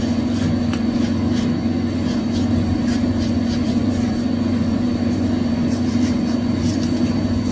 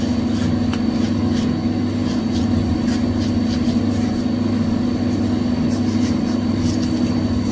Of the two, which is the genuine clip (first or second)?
second